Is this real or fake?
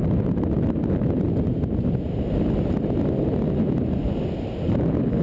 real